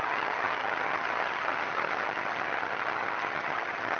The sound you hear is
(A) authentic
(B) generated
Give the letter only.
B